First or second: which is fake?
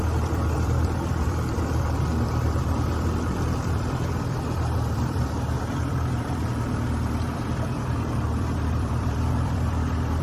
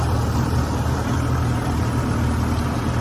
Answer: first